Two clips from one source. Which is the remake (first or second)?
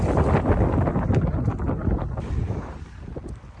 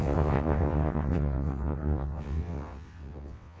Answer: second